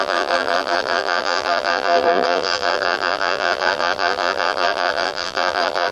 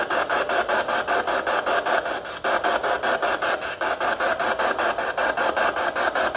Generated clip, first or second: first